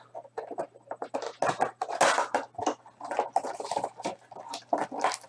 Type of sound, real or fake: real